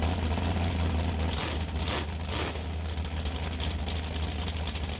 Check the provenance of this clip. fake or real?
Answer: real